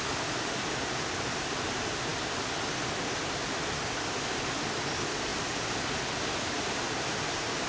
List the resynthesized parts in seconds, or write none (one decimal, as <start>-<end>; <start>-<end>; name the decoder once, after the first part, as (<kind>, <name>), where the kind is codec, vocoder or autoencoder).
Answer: none